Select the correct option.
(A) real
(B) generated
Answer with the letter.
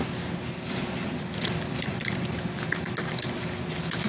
A